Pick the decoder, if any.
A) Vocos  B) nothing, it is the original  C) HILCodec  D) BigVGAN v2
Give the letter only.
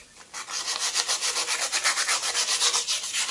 D